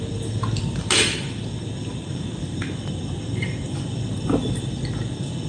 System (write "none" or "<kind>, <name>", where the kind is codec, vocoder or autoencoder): none